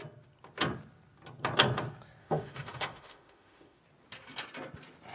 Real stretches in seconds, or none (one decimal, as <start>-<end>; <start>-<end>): 0.0-2.2; 3.8-5.1